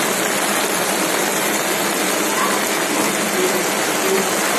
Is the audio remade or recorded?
recorded